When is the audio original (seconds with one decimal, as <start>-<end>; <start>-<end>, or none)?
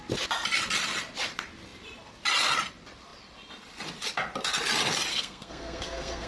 0.0-5.1